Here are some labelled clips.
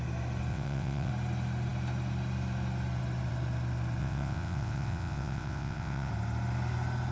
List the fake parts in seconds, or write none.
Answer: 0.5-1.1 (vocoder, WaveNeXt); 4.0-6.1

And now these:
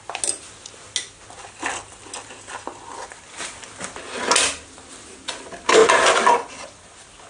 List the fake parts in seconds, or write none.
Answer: none